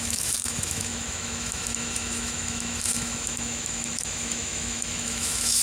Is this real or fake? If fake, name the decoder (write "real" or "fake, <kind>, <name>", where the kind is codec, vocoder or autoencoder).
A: fake, autoencoder, DAC-VAE